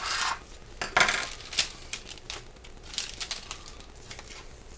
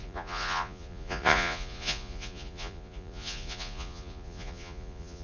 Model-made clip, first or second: second